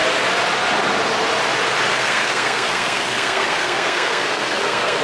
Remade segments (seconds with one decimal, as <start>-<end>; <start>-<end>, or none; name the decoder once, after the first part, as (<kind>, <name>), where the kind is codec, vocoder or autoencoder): 1.9-5.0 (codec, SNAC)